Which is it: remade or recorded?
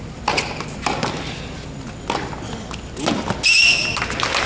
recorded